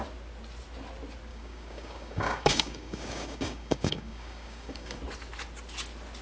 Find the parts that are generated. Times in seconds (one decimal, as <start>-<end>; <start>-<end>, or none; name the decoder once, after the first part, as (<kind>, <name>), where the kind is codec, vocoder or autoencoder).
1.3-5.0 (codec, DAC)